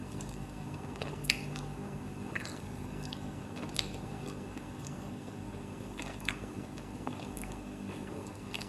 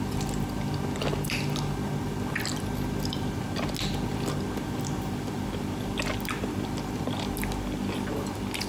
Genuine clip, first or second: second